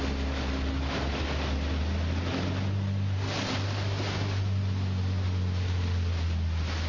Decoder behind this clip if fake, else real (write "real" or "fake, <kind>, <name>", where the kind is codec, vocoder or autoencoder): real